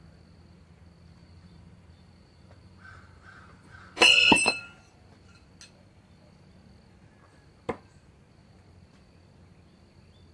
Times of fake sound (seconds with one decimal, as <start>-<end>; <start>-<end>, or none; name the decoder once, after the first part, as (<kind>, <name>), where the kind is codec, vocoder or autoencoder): 1.2-4.6 (vocoder, BigVGAN v2)

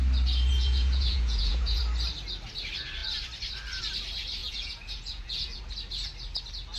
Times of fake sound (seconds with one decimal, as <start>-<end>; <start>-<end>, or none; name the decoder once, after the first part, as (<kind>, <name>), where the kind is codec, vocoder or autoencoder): 0.5-1.8 (vocoder, Vocos); 4.4-5.6

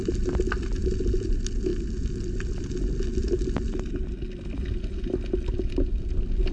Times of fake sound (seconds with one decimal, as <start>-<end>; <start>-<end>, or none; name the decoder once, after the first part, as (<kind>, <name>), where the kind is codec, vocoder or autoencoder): none

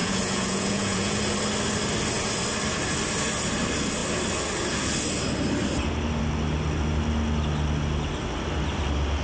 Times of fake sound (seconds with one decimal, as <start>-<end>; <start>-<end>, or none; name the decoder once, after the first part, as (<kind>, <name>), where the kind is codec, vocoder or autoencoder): 0.0-1.2 (vocoder, Vocos)

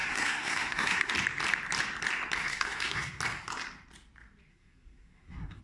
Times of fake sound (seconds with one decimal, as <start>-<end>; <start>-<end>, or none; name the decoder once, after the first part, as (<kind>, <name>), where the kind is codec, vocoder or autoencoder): 0.0-1.1 (codec, SNAC); 2.4-3.2; 4.5-5.6

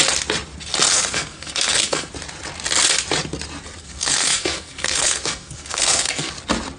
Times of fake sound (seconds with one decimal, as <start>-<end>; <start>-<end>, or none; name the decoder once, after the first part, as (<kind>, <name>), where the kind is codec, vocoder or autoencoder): 0.9-2.1 (codec, SNAC); 3.8-6.3

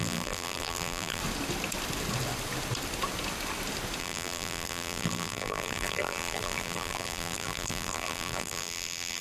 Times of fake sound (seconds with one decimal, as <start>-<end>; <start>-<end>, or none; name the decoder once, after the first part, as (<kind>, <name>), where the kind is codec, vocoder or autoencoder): 0.0-1.2 (vocoder, BigVGAN v2); 4.0-9.2